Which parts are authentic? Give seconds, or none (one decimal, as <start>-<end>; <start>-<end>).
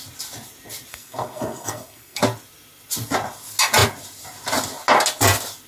0.0-0.9; 2.2-5.7